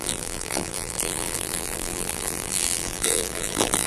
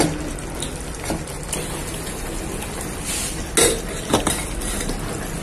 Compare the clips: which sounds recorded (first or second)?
second